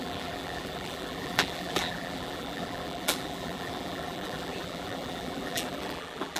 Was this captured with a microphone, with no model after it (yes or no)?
no